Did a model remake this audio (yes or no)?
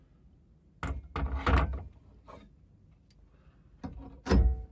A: no